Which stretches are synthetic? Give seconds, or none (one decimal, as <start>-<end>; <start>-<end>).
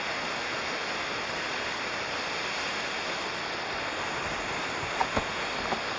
5.0-5.5